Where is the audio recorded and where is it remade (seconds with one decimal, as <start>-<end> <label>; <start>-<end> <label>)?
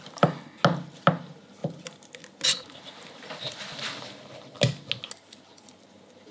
0.0-6.3 recorded